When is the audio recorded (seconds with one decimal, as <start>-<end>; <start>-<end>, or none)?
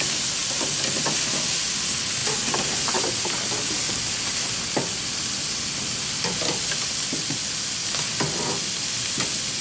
0.0-9.6